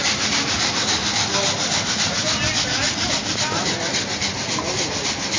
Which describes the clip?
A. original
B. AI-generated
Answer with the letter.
A